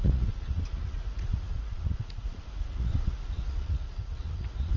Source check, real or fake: fake